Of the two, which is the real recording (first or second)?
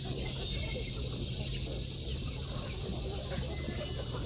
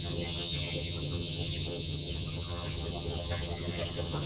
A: first